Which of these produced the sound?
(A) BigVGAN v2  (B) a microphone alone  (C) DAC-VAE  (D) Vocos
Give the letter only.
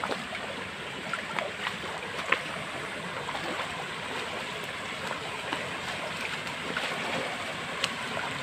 A